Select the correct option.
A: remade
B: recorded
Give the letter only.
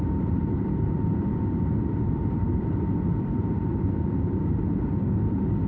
A